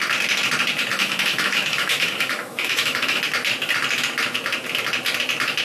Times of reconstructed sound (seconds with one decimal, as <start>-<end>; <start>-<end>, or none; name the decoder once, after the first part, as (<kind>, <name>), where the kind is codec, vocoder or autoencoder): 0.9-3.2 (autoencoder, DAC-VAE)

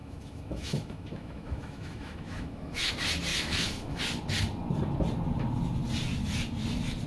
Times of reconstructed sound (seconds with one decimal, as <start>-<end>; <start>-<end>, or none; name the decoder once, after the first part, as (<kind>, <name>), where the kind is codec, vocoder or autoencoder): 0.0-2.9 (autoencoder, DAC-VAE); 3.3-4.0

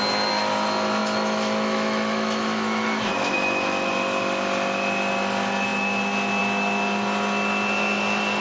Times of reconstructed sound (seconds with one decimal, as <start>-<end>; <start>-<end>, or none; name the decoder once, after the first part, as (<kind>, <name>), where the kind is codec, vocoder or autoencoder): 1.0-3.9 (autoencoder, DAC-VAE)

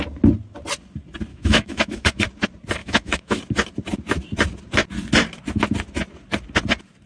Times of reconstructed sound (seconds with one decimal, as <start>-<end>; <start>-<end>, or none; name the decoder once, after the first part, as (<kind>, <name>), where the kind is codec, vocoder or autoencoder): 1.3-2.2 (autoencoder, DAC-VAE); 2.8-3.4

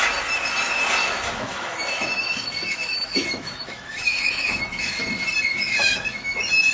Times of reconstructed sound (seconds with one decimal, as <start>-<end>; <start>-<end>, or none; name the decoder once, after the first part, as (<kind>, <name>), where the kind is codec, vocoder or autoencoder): 1.0-5.0 (autoencoder, DAC-VAE); 5.5-6.7

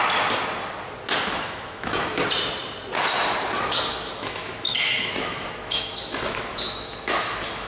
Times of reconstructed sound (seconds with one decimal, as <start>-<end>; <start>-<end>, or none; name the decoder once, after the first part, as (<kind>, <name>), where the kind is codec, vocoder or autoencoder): 1.3-2.2 (autoencoder, DAC-VAE); 3.6-7.7

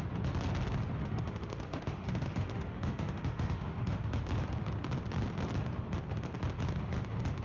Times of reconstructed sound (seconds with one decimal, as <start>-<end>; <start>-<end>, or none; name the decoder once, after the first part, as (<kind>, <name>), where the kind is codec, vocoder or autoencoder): 1.0-4.1 (autoencoder, DAC-VAE)

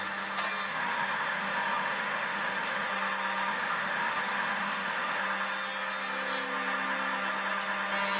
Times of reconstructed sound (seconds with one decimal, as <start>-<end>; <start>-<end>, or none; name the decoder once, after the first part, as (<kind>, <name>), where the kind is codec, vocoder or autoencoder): 0.7-2.9 (autoencoder, DAC-VAE); 3.5-5.2